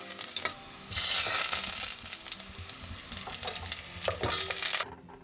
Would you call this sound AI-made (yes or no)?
no